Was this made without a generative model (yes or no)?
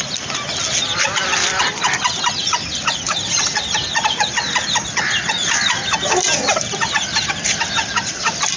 yes